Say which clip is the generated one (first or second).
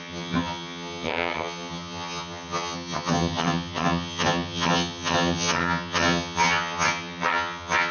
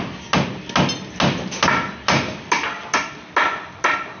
first